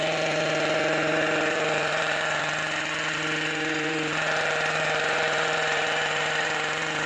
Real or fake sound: fake